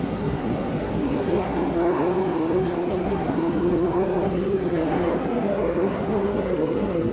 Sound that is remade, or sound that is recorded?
remade